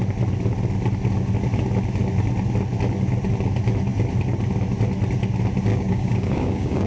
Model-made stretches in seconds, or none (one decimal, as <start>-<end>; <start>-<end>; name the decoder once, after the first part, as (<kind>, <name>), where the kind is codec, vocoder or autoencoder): 5.7-6.9 (codec, DAC)